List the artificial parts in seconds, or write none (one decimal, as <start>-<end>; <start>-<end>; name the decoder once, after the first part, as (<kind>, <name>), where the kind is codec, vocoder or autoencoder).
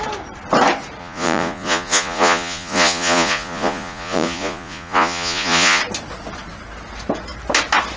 1.0-5.8 (vocoder, Vocos)